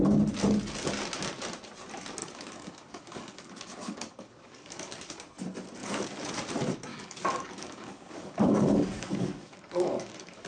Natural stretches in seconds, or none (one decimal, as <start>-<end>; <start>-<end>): 0.0-2.2; 5.0-5.8; 6.3-6.9